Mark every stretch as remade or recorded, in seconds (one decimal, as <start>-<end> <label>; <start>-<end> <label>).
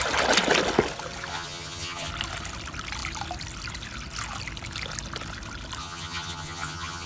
0.0-1.3 recorded; 1.3-2.1 remade; 2.1-5.8 recorded; 5.8-7.1 remade